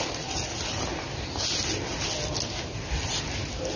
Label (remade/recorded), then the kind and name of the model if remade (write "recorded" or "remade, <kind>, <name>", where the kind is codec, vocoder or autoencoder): recorded